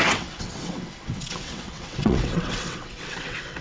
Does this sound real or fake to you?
fake